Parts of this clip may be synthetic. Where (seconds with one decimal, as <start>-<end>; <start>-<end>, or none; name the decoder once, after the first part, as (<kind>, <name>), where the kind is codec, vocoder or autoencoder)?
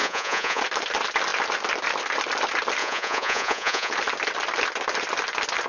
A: 0.0-0.6 (vocoder, Vocos); 2.8-3.9